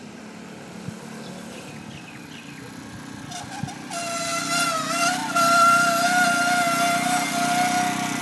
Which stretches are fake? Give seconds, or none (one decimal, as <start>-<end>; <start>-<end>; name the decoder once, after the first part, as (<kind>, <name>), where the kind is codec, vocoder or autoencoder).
5.2-5.9 (vocoder, BigVGAN v2)